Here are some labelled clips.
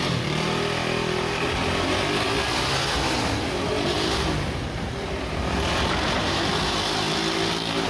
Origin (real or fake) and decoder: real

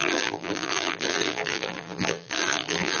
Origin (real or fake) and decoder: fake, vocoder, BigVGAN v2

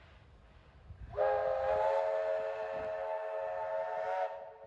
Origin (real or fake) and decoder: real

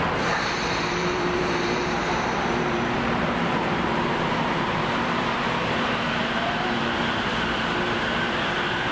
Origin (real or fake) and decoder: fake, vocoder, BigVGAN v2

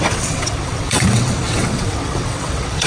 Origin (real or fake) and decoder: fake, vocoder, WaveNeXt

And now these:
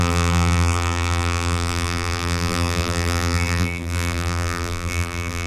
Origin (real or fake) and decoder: fake, vocoder, BigVGAN v2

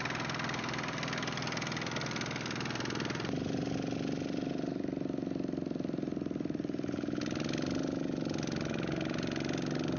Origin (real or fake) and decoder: real